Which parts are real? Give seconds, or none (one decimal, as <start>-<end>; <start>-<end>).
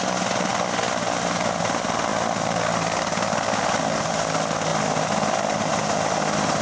0.0-6.6